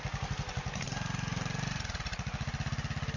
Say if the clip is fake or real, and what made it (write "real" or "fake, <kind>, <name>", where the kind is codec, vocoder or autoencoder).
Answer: real